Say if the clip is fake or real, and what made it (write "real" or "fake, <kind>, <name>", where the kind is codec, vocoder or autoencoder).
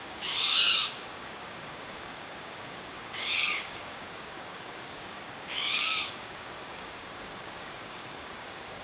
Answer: fake, codec, DAC